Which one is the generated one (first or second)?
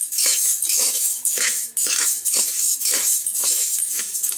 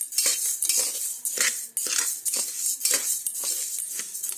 first